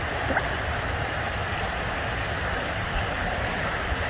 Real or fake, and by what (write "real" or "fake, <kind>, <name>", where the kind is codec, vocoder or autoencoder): real